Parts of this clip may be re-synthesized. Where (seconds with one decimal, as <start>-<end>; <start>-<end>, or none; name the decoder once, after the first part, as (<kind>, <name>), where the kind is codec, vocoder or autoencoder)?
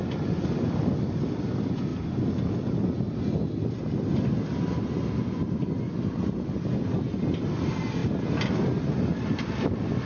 none